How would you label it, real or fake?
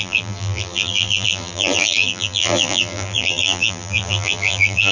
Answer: fake